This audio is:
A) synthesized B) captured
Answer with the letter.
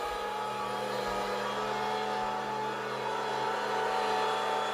B